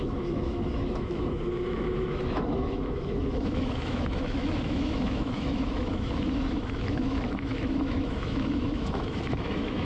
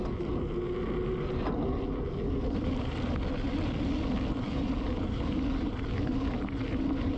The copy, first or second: first